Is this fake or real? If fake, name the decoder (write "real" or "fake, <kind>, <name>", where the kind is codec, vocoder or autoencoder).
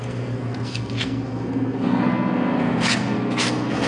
fake, codec, SNAC